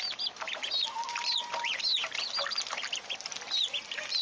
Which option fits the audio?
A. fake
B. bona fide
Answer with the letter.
B